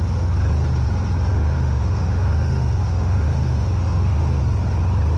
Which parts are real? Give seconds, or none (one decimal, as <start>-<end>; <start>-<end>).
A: 0.0-1.3; 4.4-5.2

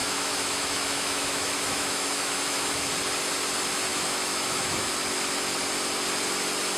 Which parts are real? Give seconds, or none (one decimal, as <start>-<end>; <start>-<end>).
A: 2.9-3.9; 4.9-6.8

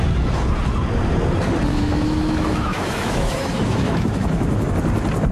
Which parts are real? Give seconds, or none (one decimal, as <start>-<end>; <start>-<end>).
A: 0.0-1.7; 4.7-5.3

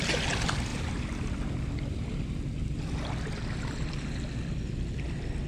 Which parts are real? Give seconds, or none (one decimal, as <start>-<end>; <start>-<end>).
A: 0.0-5.5

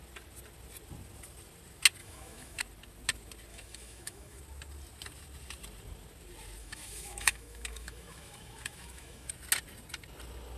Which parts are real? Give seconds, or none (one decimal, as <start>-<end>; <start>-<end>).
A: 0.0-2.0; 2.6-3.5; 4.4-6.6; 9.3-10.6

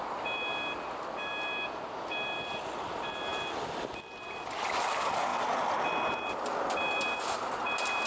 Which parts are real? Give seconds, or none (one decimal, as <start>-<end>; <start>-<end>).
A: 0.0-8.1